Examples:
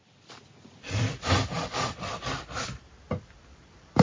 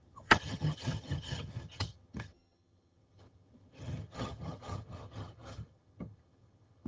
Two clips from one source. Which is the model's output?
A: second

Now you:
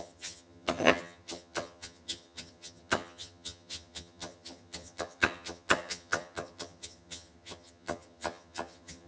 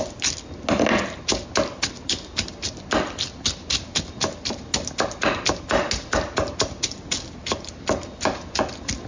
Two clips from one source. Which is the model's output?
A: first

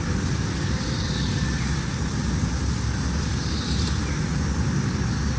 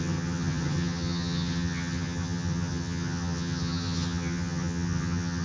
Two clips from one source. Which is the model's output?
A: second